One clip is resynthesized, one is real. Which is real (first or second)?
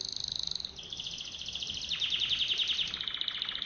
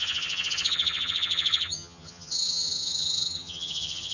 first